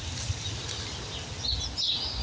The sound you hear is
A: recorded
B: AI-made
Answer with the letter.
A